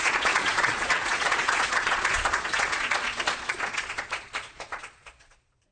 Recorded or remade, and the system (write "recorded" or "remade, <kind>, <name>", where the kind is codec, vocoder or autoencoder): remade, vocoder, Vocos